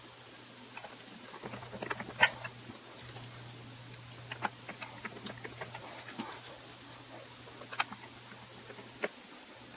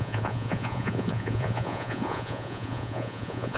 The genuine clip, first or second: first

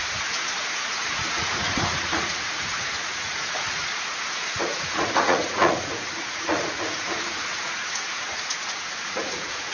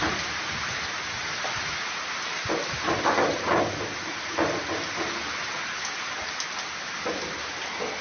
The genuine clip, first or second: second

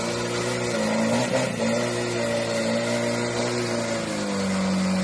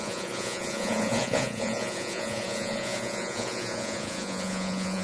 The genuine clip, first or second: first